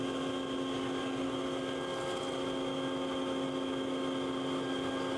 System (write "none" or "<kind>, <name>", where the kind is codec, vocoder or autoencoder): none